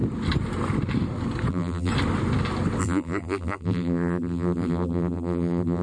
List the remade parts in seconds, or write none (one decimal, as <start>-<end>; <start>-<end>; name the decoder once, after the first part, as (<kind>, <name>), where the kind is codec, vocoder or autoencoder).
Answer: 1.5-1.9 (vocoder, BigVGAN v2); 2.8-5.8